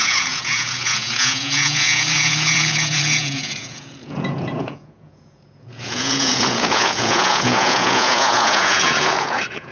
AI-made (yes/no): yes